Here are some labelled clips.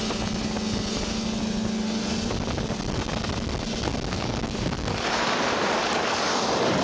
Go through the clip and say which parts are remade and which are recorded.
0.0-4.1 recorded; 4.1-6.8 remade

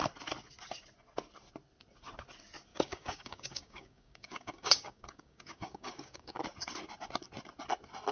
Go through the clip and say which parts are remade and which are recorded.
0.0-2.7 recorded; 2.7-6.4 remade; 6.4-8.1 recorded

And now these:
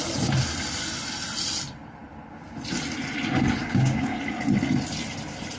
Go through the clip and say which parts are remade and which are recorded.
0.0-3.6 recorded; 3.6-4.2 remade; 4.2-5.6 recorded